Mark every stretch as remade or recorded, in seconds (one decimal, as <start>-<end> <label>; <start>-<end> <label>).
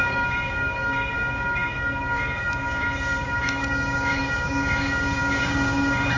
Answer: 0.0-6.2 remade